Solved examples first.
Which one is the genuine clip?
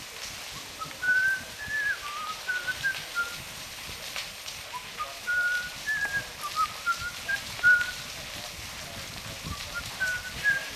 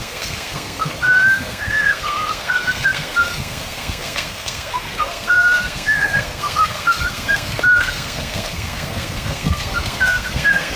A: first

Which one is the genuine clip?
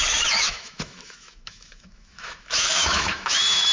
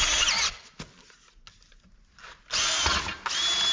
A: second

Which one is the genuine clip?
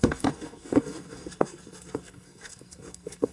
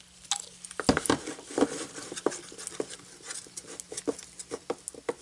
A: second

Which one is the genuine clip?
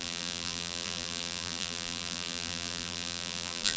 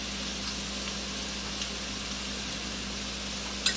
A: second